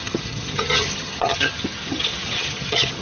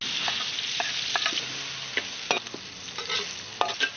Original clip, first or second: second